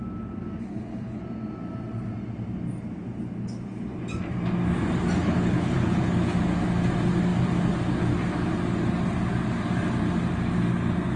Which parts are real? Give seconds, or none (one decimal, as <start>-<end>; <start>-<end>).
0.0-0.6; 1.2-5.2; 6.1-11.2

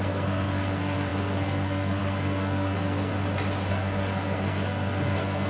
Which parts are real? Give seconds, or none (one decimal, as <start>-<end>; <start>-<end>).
3.1-3.7

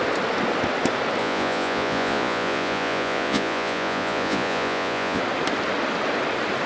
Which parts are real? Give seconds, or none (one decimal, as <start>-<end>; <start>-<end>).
0.0-1.2; 5.2-6.7

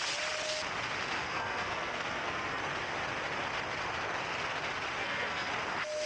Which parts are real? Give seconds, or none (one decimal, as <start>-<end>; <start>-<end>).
0.0-1.2; 2.6-5.0; 5.5-6.1

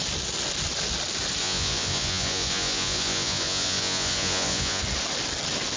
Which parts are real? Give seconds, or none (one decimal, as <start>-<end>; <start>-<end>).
0.0-1.4; 4.8-5.8

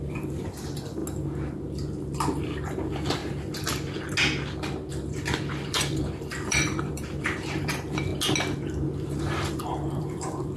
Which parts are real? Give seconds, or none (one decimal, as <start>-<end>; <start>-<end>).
1.0-2.4; 3.2-4.9; 8.1-9.7

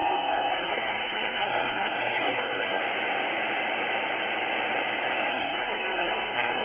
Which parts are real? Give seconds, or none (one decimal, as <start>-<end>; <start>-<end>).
2.8-5.3

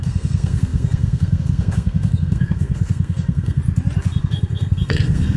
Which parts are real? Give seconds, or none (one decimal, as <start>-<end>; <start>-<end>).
3.6-4.2